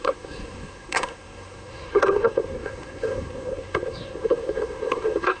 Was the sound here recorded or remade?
remade